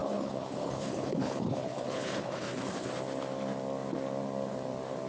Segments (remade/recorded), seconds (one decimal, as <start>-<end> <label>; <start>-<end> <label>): 0.0-2.9 remade; 2.9-5.1 recorded